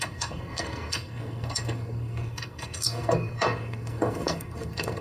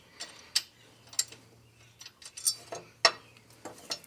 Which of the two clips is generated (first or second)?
first